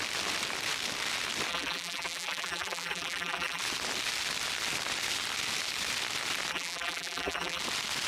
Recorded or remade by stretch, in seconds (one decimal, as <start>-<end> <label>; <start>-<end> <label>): 0.0-1.5 recorded; 1.5-3.6 remade; 3.6-6.5 recorded; 6.5-7.6 remade; 7.6-8.1 recorded